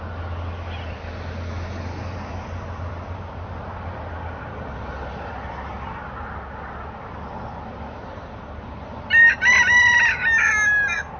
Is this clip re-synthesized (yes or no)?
no